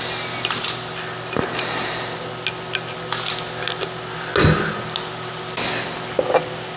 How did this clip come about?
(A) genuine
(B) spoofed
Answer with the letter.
A